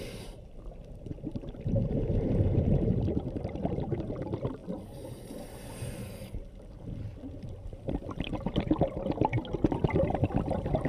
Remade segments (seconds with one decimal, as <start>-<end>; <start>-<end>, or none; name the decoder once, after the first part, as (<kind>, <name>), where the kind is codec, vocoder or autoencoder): none